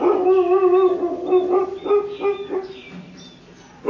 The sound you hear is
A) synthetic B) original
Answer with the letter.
B